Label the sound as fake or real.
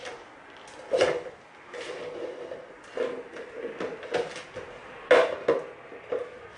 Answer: real